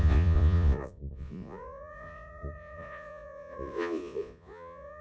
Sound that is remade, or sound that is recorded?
remade